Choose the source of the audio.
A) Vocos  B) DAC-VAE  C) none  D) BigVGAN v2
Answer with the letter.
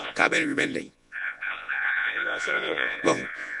A